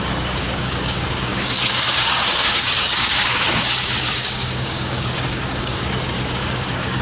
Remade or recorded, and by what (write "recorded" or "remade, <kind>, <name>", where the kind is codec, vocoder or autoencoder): remade, codec, DAC